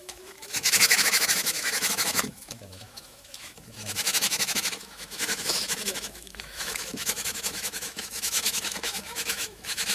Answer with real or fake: fake